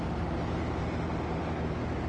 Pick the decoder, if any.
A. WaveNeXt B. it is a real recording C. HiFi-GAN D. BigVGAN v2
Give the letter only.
B